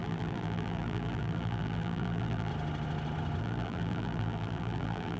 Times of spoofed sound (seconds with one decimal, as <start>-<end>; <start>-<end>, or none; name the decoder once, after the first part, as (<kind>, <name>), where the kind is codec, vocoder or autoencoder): 0.0-2.5 (vocoder, BigVGAN v2); 3.4-5.2